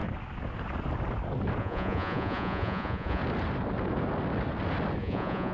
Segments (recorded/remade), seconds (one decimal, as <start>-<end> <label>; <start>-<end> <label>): 0.0-1.6 recorded; 1.6-3.2 remade; 3.2-5.0 recorded; 5.0-5.5 remade